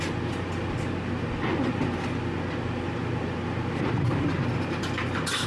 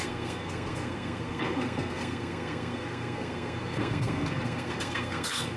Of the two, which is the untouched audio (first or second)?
first